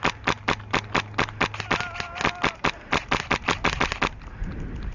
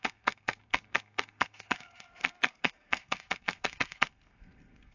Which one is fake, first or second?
second